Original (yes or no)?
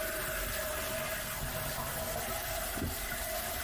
yes